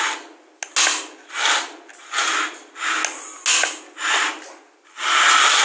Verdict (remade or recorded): recorded